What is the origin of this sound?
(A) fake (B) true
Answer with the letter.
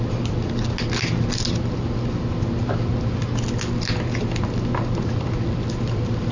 B